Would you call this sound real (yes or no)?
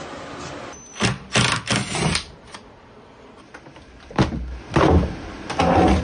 yes